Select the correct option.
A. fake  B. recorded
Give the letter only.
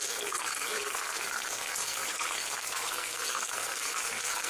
A